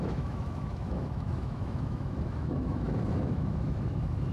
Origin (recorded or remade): remade